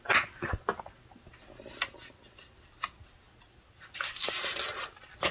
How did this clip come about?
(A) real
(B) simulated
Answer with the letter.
A